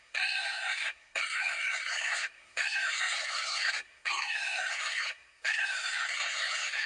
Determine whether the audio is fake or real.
fake